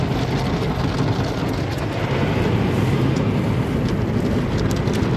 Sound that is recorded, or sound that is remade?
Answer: recorded